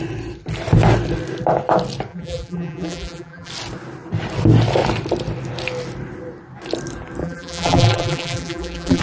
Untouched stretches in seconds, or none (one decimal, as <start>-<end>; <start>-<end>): 0.0-2.1; 3.5-7.2